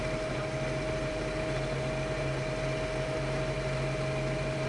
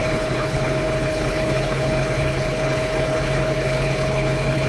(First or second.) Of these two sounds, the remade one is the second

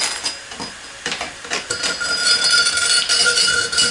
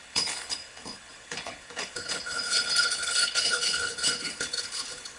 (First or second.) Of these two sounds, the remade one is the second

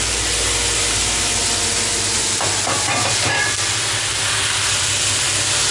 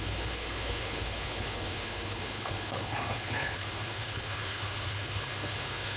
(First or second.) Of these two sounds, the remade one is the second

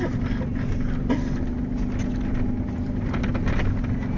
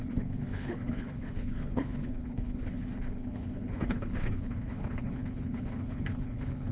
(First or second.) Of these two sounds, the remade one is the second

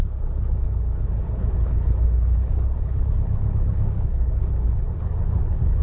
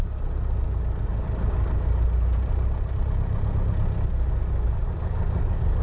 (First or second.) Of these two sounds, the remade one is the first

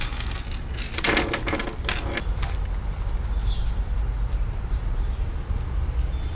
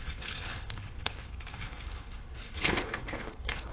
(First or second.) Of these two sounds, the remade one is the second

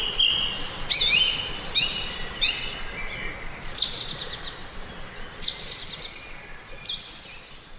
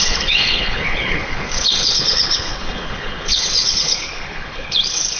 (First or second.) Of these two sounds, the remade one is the second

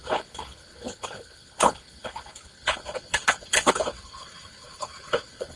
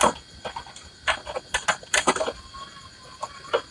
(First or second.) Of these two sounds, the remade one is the first